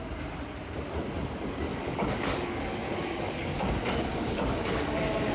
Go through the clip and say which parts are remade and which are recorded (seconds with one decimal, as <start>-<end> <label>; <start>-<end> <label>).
0.0-1.7 recorded; 1.7-5.3 remade